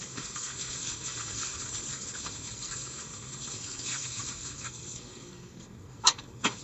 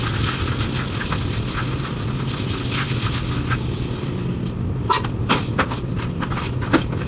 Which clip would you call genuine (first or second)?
second